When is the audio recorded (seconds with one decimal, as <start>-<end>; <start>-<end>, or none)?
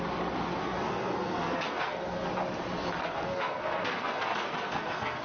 0.0-0.6; 2.3-3.0